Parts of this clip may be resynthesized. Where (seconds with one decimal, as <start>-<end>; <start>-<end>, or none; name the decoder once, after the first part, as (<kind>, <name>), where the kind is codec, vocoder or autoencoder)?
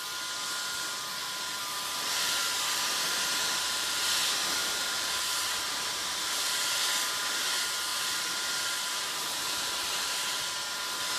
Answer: 1.2-4.1 (vocoder, BigVGAN v2); 4.6-6.9; 7.9-10.5